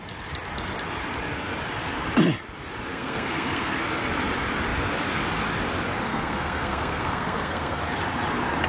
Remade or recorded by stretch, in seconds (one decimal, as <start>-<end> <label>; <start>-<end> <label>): 0.0-2.9 recorded; 2.9-3.7 remade; 3.7-6.1 recorded; 6.1-7.8 remade; 7.8-8.7 recorded